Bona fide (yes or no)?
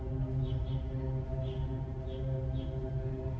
yes